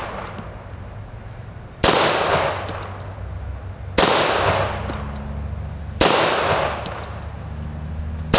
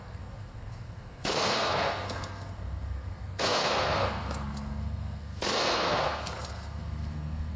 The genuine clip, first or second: first